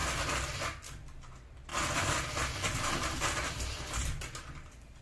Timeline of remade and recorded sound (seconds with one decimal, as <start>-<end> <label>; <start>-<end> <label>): 0.0-5.0 recorded